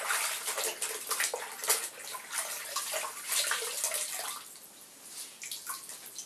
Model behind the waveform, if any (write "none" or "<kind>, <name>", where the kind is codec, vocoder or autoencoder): none